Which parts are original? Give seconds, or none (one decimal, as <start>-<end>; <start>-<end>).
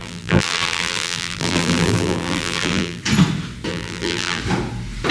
3.0-3.7; 4.4-5.1